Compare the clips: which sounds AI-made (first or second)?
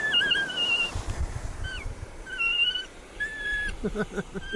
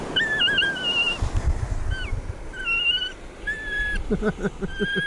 first